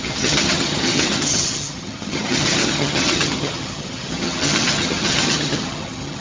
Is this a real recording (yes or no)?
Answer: no